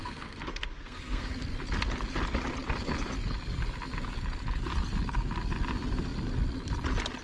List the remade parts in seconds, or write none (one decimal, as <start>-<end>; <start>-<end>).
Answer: 0.0-1.3